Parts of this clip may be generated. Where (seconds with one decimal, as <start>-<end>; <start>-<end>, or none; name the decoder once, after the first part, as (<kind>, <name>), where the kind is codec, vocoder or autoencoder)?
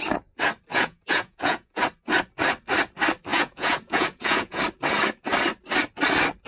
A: 0.7-1.8 (vocoder, Vocos); 3.3-4.6